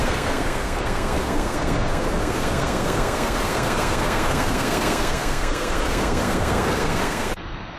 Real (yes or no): no